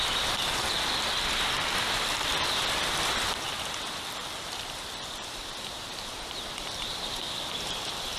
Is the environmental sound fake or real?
fake